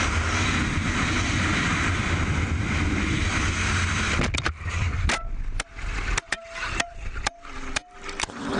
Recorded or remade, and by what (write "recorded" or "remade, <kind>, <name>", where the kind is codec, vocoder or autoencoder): recorded